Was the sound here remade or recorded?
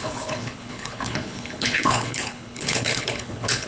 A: remade